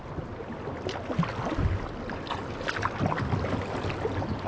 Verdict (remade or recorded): recorded